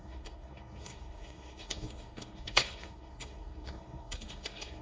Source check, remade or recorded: remade